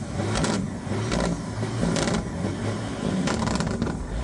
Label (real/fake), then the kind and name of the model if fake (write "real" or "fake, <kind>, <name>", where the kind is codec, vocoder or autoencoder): real